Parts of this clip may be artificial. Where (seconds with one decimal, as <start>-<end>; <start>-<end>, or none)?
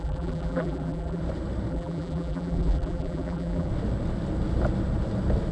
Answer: 0.0-1.2; 1.7-3.7